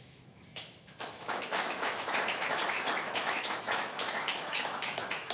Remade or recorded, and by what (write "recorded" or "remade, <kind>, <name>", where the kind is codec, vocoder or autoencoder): remade, autoencoder, DAC-VAE